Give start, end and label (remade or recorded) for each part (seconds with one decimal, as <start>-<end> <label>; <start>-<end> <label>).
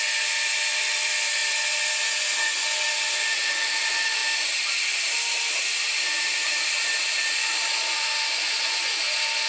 0.0-4.2 remade; 4.2-7.9 recorded; 7.9-9.5 remade